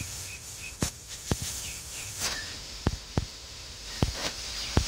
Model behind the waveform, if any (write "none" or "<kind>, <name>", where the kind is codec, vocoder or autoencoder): autoencoder, DAC-VAE